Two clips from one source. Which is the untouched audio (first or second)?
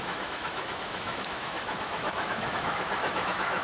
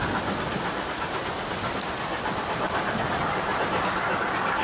second